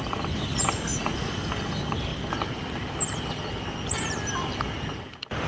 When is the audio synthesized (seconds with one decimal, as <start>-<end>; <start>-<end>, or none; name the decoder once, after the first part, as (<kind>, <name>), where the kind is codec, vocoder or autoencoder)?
0.9-1.5 (vocoder, Vocos)